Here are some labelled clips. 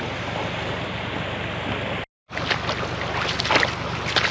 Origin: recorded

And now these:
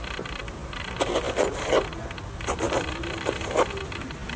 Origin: recorded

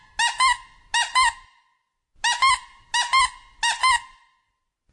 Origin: recorded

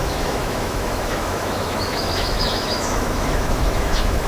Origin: remade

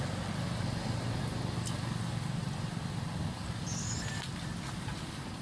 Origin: recorded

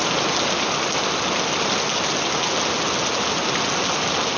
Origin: recorded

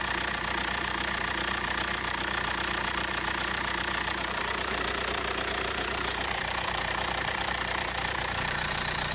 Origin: remade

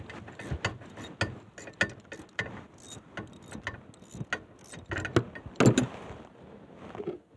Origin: recorded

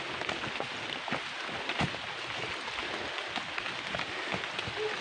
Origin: recorded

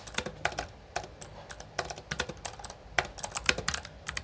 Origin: recorded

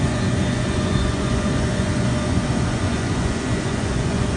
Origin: remade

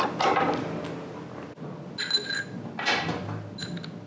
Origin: recorded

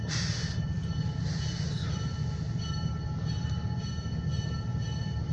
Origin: recorded